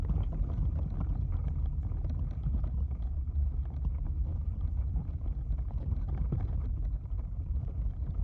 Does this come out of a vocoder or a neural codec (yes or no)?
no